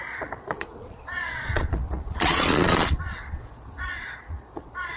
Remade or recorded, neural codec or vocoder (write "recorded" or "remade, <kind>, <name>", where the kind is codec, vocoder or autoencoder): remade, vocoder, Vocos